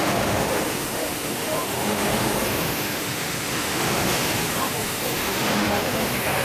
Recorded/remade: remade